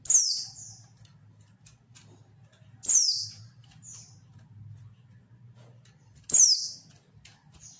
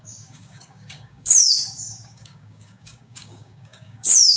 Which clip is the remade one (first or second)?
second